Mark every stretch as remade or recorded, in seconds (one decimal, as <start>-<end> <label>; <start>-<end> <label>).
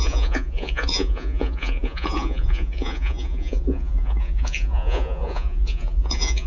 0.0-6.5 remade